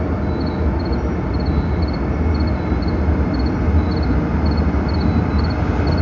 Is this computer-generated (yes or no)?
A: no